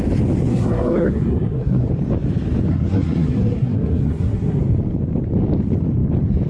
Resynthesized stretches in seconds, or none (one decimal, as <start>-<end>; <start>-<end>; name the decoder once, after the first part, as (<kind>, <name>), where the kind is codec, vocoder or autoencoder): 0.5-1.9 (codec, SNAC); 2.7-4.6

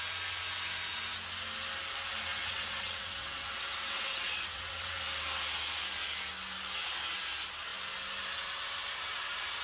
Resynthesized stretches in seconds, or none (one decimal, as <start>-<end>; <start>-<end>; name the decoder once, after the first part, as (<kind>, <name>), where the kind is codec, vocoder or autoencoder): 2.3-5.0 (vocoder, WaveNeXt)